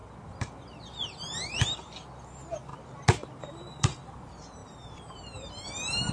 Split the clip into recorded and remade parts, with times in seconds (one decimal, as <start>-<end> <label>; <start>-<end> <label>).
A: 0.0-2.2 recorded; 2.2-2.7 remade; 2.7-3.4 recorded; 3.4-6.1 remade